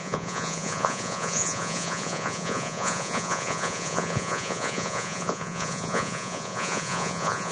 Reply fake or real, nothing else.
fake